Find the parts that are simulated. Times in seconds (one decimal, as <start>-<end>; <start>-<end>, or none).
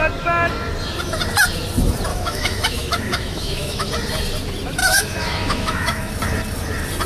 2.1-3.9; 4.8-6.1